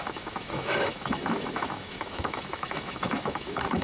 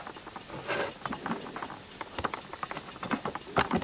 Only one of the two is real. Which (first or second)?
second